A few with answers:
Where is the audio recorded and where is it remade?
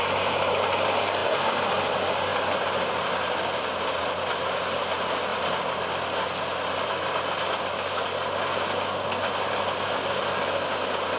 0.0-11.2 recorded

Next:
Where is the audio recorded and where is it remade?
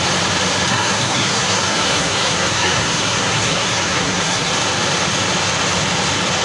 0.0-0.7 recorded; 0.7-4.5 remade; 4.5-6.4 recorded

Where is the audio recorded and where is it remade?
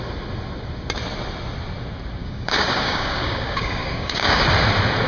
0.0-2.2 recorded; 2.2-4.4 remade; 4.4-5.1 recorded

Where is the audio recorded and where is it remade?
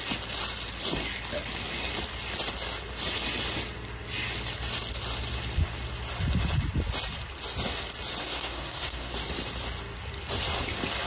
0.0-8.2 recorded; 8.2-9.1 remade; 9.1-11.1 recorded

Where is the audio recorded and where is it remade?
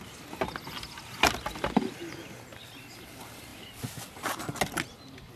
0.0-5.4 recorded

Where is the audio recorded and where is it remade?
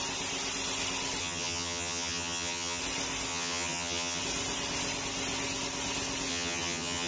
0.0-1.2 recorded; 1.2-2.8 remade; 2.8-3.3 recorded; 3.3-4.2 remade; 4.2-6.3 recorded; 6.3-7.1 remade